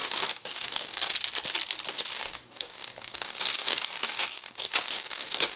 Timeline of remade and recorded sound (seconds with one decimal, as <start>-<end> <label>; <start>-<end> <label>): 0.0-1.1 remade; 1.1-1.9 recorded; 1.9-5.6 remade